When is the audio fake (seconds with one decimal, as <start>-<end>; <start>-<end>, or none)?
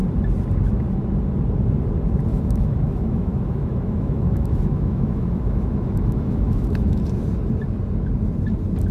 2.3-7.0